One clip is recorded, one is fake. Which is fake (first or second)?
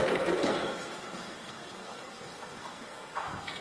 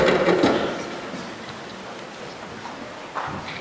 first